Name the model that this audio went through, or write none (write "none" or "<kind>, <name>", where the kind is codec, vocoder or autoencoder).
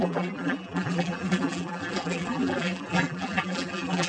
vocoder, BigVGAN v2